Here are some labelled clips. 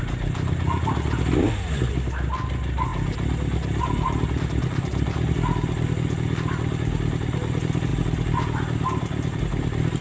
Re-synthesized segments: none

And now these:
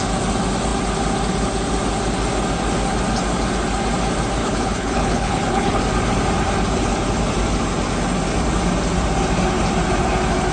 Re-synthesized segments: 4.4-5.8 (codec, HILCodec)

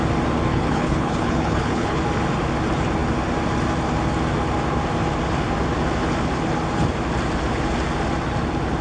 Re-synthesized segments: 0.5-2.0 (codec, HILCodec)